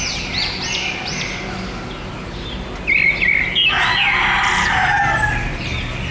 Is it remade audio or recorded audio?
recorded